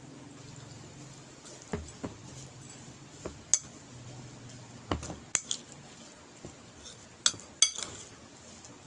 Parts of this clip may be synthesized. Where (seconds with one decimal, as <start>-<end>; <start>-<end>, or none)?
none